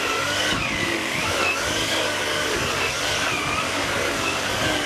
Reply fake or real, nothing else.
fake